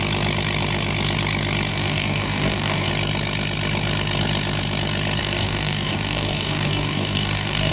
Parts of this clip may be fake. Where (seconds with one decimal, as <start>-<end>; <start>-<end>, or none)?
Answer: 1.7-2.9; 5.2-7.7